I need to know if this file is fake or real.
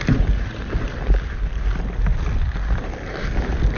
real